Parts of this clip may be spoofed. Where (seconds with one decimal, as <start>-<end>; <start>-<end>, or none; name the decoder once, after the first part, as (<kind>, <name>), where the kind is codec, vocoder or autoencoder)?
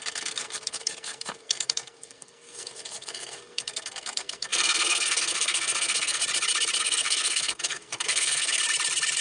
0.0-6.2 (codec, SNAC); 6.8-8.6